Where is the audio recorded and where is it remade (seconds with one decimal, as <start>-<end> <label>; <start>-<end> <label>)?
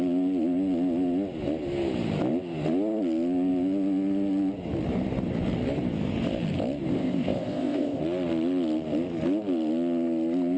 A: 0.0-6.9 recorded; 6.9-8.0 remade; 8.0-10.6 recorded